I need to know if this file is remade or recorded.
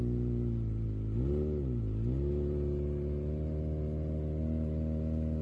recorded